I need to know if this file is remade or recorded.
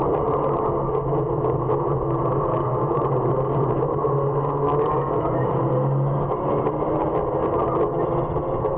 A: recorded